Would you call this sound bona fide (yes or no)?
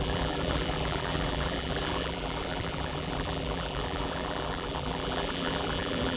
no